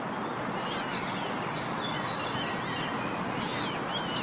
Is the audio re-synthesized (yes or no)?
no